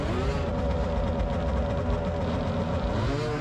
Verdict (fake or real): real